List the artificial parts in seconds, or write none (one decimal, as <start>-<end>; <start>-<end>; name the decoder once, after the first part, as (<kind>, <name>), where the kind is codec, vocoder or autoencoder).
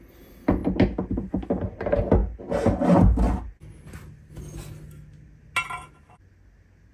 none